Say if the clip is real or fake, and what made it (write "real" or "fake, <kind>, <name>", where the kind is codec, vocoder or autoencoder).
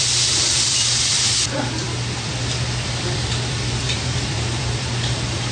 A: fake, vocoder, BigVGAN v2